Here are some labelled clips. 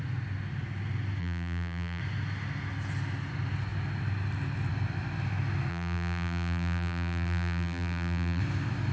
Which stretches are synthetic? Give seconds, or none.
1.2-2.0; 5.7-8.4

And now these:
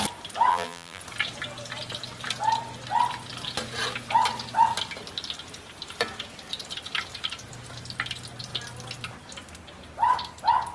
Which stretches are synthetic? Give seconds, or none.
0.5-1.0

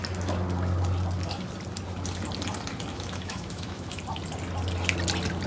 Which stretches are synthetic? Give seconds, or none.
2.9-4.0

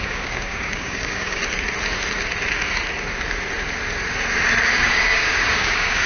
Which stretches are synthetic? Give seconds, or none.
0.0-1.4; 4.7-6.1

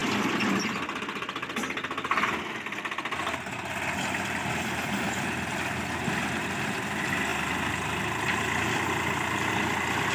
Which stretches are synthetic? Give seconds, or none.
none